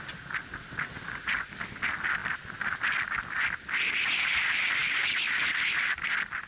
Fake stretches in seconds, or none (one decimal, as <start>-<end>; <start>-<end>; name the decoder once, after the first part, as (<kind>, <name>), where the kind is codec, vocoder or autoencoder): none